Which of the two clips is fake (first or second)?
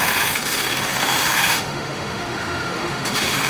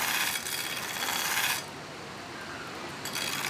first